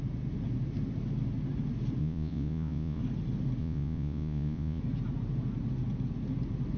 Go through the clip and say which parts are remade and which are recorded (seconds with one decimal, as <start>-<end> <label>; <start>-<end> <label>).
0.0-2.0 recorded; 2.0-3.0 remade; 3.0-3.6 recorded; 3.6-4.8 remade; 4.8-6.8 recorded